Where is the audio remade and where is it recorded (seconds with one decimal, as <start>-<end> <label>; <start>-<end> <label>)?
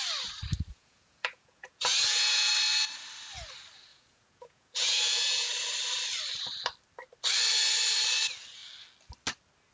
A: 0.0-0.7 recorded; 0.7-2.5 remade; 2.5-3.9 recorded; 3.9-5.5 remade; 5.5-9.7 recorded